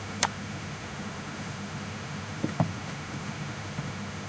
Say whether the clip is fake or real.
fake